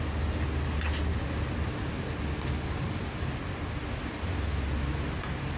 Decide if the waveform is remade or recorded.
recorded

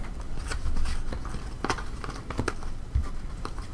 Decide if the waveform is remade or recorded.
recorded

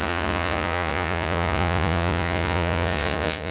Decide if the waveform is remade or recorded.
remade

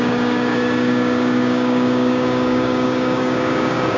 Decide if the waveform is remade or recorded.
remade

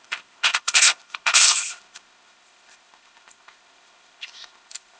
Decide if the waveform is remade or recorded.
remade